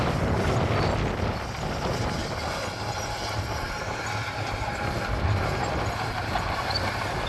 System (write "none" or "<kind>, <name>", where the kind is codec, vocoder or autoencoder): none